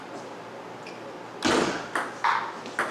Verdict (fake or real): real